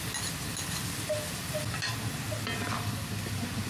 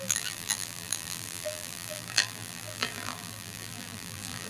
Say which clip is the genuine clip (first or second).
first